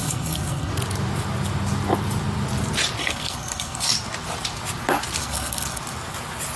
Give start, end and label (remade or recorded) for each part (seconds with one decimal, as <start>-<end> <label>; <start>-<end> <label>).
0.0-0.7 remade; 0.7-3.0 recorded; 3.0-3.9 remade; 3.9-5.2 recorded; 5.2-5.8 remade; 5.8-6.6 recorded